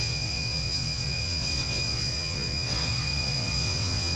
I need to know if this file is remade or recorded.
remade